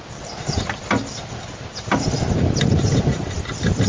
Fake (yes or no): no